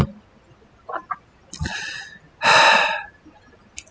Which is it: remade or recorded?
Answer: recorded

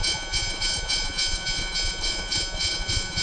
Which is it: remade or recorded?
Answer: remade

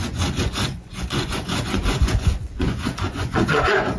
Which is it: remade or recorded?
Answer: remade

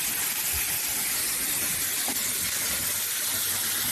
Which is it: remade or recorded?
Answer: recorded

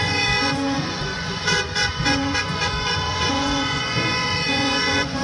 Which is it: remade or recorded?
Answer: remade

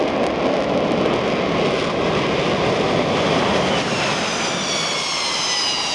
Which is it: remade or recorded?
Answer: recorded